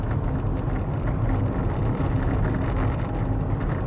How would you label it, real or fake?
real